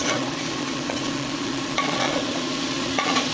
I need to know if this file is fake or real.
fake